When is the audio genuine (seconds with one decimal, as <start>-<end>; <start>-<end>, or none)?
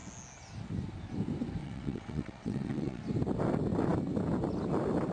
0.0-1.6; 3.0-5.1